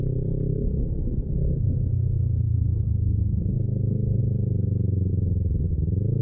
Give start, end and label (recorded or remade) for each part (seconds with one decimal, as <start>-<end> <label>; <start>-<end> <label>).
0.0-0.5 recorded; 0.5-4.2 remade; 4.2-6.2 recorded